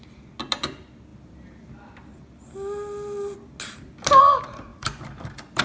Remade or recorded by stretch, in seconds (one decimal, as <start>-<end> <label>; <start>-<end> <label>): 0.0-4.7 recorded; 4.7-5.6 remade